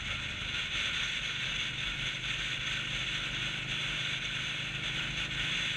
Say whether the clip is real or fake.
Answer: real